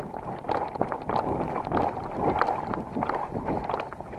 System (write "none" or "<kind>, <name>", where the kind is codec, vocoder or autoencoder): none